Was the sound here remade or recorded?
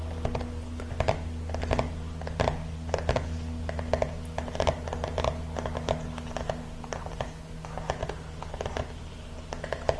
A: recorded